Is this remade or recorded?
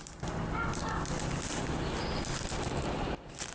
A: recorded